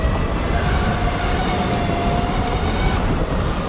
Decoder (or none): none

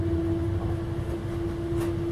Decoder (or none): none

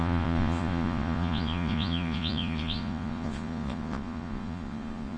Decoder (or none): vocoder, Vocos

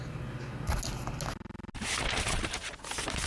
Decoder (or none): none